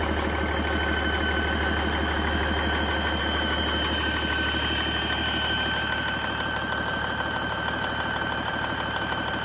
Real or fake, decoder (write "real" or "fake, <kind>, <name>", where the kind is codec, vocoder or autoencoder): real